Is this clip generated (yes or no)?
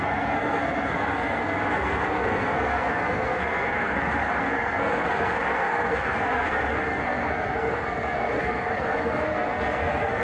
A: yes